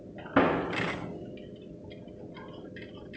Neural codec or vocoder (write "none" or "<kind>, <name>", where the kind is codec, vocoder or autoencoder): none